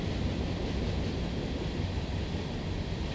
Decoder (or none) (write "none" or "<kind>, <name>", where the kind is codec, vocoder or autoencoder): none